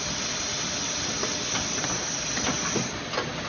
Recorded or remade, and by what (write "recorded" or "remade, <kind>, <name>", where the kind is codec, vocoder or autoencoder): recorded